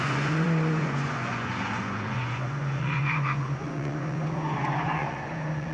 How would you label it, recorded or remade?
remade